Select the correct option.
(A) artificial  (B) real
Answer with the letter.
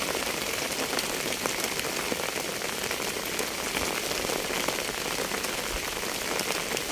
B